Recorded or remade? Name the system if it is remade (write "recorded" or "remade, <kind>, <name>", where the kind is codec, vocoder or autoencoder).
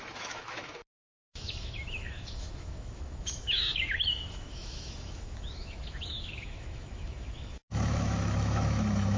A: remade, autoencoder, DAC-VAE